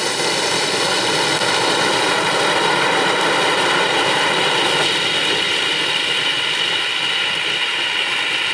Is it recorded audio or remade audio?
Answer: remade